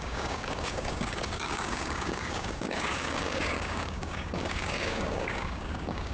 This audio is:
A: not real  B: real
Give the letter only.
A